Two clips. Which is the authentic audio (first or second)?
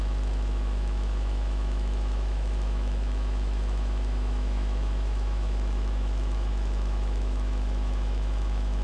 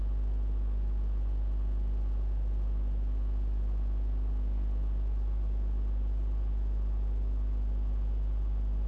second